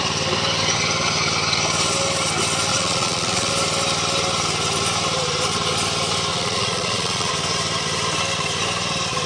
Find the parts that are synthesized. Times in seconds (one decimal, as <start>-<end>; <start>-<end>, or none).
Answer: 2.7-3.5; 6.3-7.3